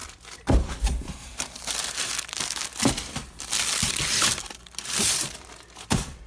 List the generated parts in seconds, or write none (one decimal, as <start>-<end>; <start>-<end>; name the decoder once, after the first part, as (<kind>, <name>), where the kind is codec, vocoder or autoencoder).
0.0-6.3 (vocoder, BigVGAN v2)